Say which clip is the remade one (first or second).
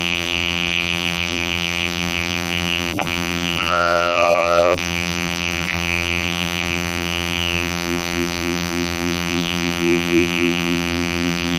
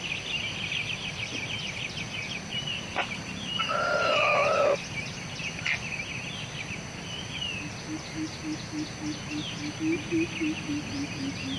first